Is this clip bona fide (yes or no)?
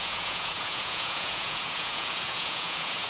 no